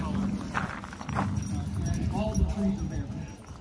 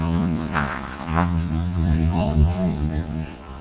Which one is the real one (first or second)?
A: first